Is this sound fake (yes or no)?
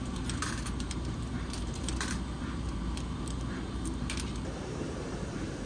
yes